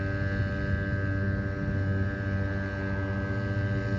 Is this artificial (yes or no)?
no